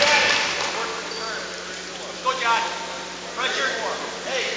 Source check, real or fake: real